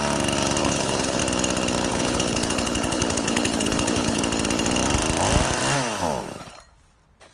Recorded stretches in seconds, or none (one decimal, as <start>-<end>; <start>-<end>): 0.0-0.6; 1.2-1.9; 4.2-7.3